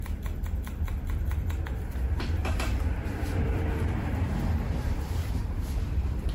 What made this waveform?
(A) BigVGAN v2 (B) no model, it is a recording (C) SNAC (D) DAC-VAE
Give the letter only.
A